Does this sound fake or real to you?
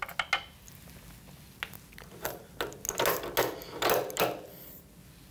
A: real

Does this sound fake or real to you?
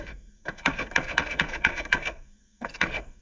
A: fake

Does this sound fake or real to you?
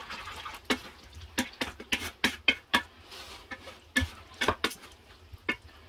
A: real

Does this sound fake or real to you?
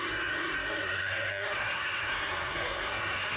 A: fake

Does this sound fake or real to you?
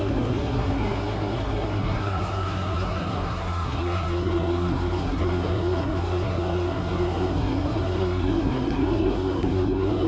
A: fake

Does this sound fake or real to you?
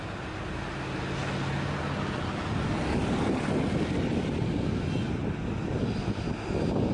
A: real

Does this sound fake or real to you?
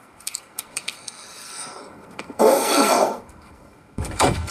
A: fake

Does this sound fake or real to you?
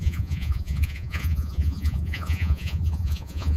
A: fake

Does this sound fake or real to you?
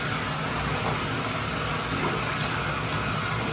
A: real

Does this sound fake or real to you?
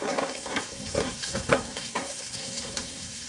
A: fake